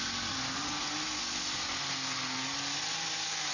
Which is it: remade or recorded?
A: recorded